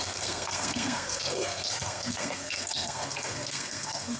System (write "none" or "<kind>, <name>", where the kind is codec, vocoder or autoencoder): codec, SNAC